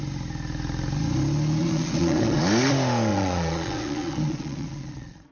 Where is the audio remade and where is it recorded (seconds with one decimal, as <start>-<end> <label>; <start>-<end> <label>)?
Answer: 0.0-1.6 recorded; 1.6-2.4 remade; 2.4-3.1 recorded; 3.1-5.3 remade